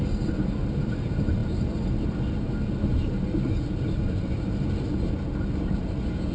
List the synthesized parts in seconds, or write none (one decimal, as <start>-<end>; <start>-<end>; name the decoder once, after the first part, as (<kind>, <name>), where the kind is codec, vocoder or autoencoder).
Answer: none